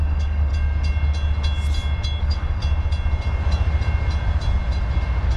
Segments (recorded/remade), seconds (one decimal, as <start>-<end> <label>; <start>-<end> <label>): 0.0-0.5 remade; 0.5-2.2 recorded; 2.2-2.6 remade; 2.6-5.4 recorded